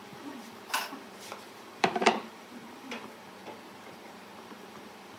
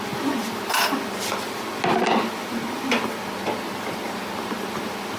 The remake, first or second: first